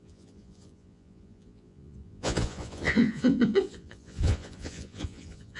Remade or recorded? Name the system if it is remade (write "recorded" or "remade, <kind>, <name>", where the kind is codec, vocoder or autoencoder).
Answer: remade, vocoder, Vocos